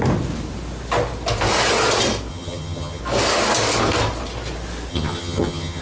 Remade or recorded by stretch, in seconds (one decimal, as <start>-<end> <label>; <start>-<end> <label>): 0.0-2.3 recorded; 2.3-3.0 remade; 3.0-4.9 recorded; 4.9-5.8 remade

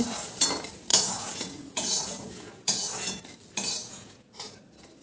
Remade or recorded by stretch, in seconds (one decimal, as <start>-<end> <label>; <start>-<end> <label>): 0.0-0.9 recorded; 0.9-3.2 remade; 3.2-3.8 recorded; 3.8-4.6 remade; 4.6-5.0 recorded